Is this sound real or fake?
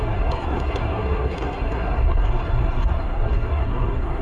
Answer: fake